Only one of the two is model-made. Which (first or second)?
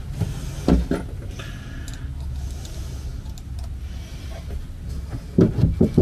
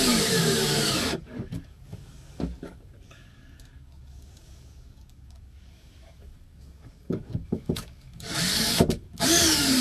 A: second